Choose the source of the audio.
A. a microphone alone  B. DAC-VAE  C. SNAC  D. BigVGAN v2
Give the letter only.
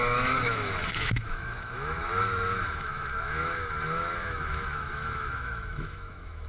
B